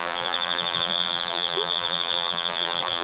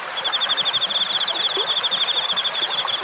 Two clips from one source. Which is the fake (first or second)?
first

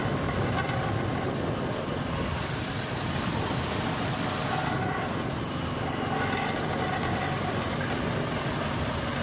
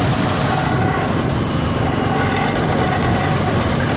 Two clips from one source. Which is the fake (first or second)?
second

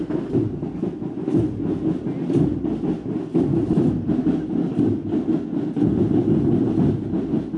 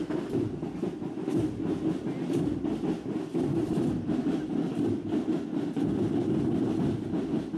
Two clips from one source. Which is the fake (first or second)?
second